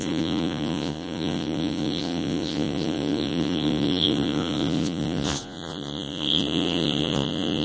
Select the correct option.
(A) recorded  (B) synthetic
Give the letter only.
B